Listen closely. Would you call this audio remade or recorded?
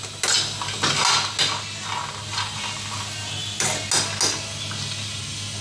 recorded